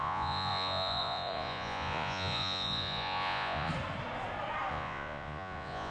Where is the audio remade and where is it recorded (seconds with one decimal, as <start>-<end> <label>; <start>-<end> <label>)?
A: 0.0-3.7 remade; 3.7-4.7 recorded; 4.7-5.9 remade